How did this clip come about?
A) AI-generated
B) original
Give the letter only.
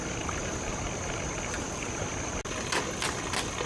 B